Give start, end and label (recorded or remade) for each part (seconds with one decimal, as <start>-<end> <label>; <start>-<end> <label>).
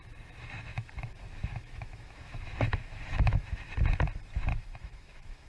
0.0-0.7 recorded; 0.7-3.7 remade; 3.7-4.5 recorded; 4.5-5.5 remade